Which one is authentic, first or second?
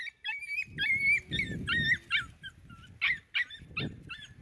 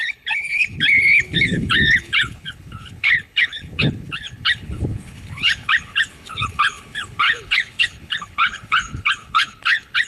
first